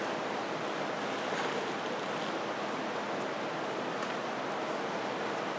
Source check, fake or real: real